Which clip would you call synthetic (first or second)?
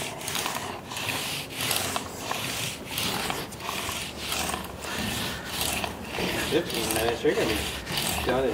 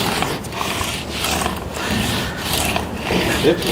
first